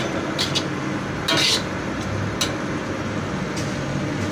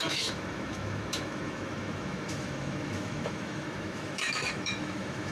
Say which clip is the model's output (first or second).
second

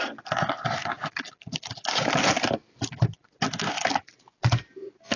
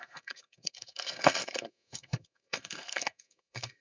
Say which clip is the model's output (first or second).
second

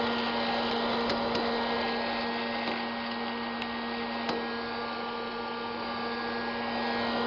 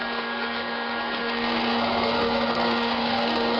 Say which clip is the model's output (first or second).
second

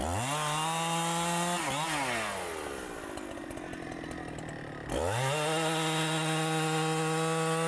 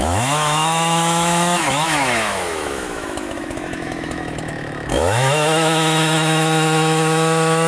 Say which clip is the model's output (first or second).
second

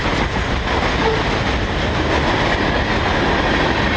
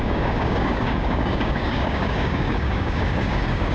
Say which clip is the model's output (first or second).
second